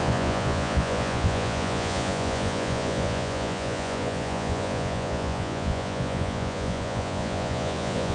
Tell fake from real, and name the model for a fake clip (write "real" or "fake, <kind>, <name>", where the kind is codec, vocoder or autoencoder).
fake, vocoder, Vocos